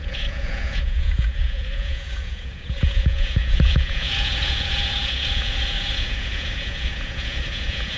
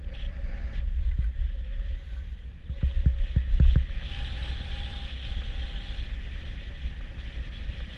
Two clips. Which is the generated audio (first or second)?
first